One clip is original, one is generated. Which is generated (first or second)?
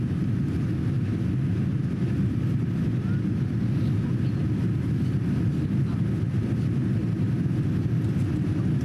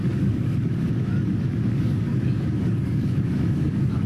second